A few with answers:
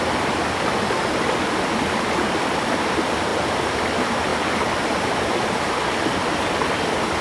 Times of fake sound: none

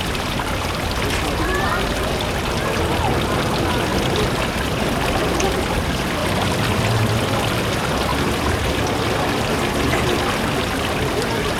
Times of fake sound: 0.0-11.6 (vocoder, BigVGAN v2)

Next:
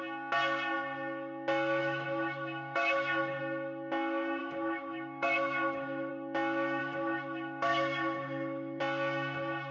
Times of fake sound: 1.8-3.4 (autoencoder, DAC-VAE); 4.4-6.1; 6.8-8.8

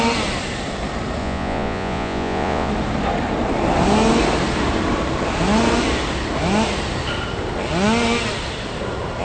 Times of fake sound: 1.2-2.7 (vocoder, Vocos)